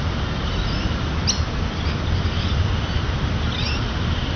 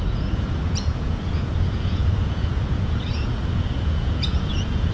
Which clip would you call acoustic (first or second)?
first